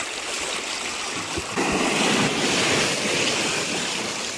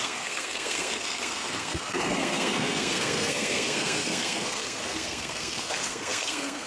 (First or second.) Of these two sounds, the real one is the first